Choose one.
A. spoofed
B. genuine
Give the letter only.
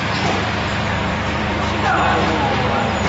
A